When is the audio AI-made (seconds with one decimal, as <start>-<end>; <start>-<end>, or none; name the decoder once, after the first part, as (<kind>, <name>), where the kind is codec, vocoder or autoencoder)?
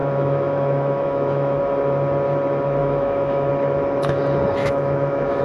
0.0-1.6 (autoencoder, DAC-VAE); 2.8-3.5; 4.6-5.4